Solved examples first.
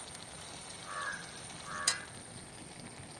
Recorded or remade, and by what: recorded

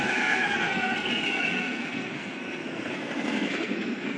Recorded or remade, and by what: remade, codec, SNAC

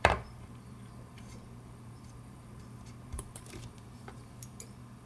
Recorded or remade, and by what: remade, vocoder, BigVGAN v2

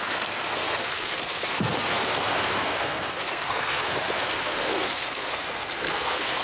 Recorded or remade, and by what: remade, codec, SNAC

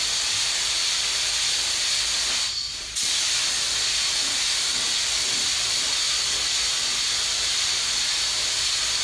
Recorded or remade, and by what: recorded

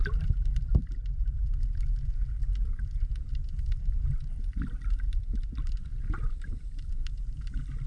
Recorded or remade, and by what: recorded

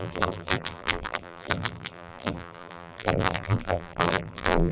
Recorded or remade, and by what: remade, vocoder, BigVGAN v2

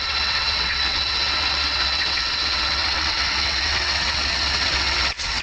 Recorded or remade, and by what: remade, vocoder, WaveNeXt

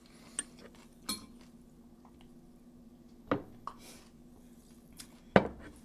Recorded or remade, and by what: recorded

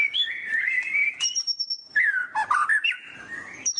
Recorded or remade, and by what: remade, vocoder, BigVGAN v2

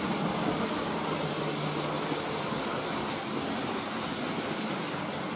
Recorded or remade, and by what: recorded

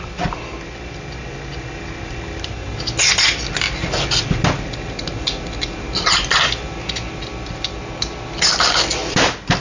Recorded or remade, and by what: recorded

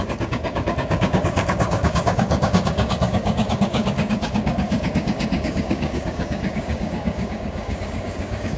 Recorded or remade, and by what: remade, codec, DAC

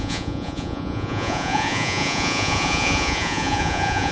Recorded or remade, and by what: remade, vocoder, Vocos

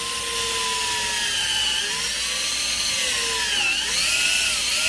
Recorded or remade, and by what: recorded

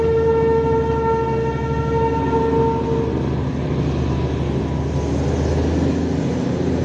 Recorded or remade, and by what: recorded